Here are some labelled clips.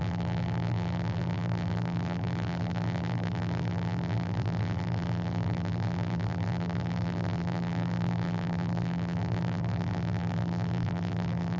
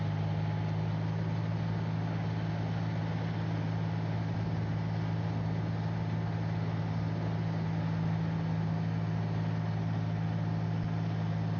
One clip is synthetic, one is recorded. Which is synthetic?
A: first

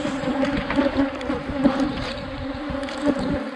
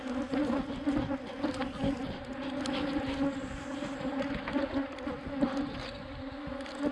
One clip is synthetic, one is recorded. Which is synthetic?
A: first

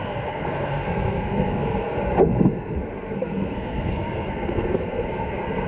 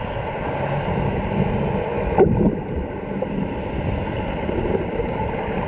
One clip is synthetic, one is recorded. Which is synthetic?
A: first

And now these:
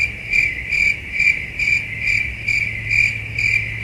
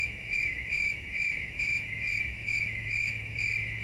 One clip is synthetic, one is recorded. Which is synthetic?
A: second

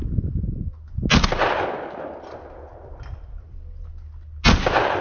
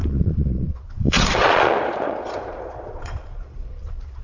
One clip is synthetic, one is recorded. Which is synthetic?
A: second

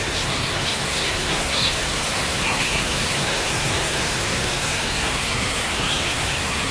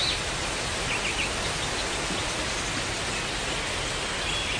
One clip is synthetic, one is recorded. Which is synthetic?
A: first